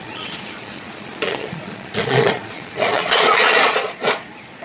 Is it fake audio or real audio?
fake